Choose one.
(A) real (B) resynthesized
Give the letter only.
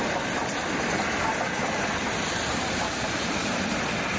A